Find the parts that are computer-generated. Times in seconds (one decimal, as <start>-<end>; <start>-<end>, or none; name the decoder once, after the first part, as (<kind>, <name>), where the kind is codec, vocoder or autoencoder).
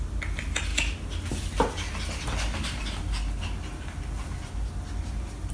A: none